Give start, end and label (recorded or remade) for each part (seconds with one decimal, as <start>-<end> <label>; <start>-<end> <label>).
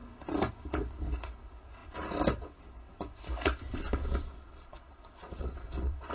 0.0-4.0 recorded; 4.0-6.1 remade